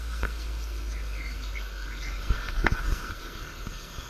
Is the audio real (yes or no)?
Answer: no